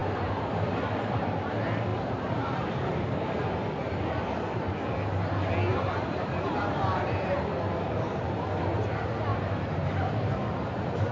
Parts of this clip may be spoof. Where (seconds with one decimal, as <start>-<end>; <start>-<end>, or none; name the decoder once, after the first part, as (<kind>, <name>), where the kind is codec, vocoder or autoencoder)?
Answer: 0.0-0.7 (vocoder, BigVGAN v2); 1.9-4.3; 5.7-8.5; 9.3-11.1